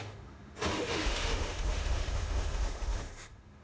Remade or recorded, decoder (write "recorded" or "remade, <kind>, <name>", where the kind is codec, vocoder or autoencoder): remade, autoencoder, DAC-VAE